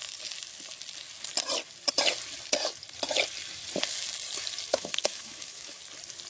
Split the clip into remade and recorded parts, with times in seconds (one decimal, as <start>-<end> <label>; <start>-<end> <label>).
0.0-4.7 recorded; 4.7-5.8 remade; 5.8-6.3 recorded